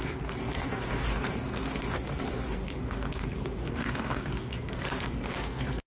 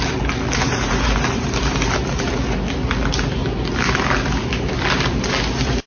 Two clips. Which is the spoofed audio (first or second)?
first